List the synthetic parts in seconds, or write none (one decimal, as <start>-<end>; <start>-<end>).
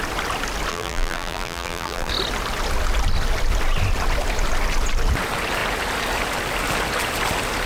0.7-2.1